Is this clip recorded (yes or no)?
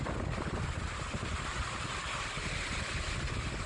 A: yes